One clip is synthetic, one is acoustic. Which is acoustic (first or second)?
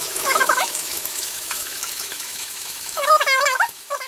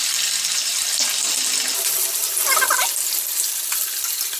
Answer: second